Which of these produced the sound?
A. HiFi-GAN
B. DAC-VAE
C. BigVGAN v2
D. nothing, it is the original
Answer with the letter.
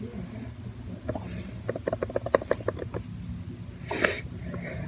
D